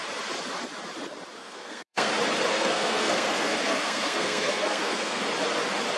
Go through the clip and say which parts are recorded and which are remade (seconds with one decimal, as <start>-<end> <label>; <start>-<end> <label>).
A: 0.0-1.4 recorded; 1.4-2.1 remade; 2.1-2.5 recorded; 2.5-5.2 remade; 5.2-6.0 recorded